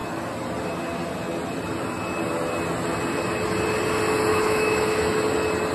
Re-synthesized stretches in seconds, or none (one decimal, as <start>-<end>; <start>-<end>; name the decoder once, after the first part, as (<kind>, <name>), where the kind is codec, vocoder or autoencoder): 4.3-5.0 (autoencoder, DAC-VAE)